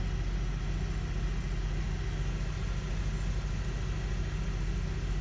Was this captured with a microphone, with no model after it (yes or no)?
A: yes